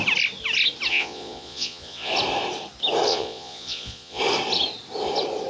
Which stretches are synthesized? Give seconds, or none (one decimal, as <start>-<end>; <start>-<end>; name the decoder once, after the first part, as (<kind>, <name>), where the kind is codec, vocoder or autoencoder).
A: 0.9-2.1 (vocoder, Vocos); 3.1-4.2